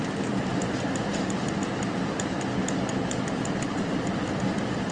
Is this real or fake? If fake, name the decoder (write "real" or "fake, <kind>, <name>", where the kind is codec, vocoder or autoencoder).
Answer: real